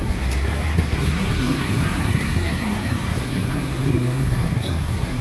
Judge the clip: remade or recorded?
remade